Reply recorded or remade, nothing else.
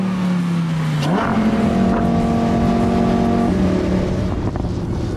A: recorded